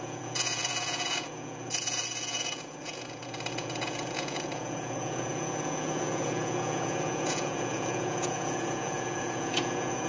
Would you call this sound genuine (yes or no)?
no